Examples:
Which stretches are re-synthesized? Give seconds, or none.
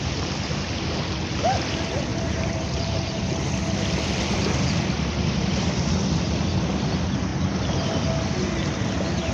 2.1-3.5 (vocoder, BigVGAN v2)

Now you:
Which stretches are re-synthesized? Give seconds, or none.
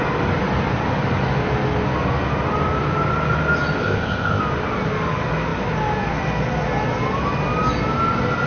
3.8-4.4 (codec, ZipCodec)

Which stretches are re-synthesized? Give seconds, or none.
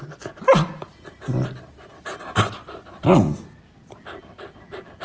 none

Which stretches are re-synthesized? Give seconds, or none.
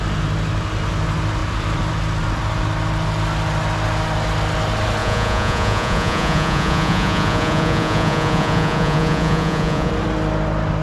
5.0-9.9 (vocoder, Vocos)